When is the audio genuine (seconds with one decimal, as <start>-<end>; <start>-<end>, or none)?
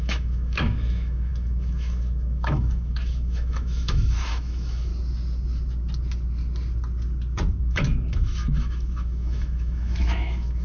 4.9-7.5